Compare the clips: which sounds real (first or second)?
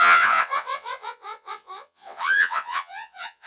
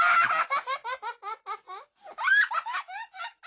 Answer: second